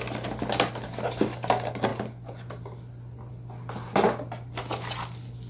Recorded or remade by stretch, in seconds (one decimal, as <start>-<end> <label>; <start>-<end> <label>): 0.0-5.5 recorded